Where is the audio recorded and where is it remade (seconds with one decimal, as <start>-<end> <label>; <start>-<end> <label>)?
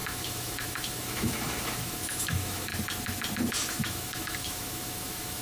0.0-2.7 remade; 2.7-3.7 recorded; 3.7-5.4 remade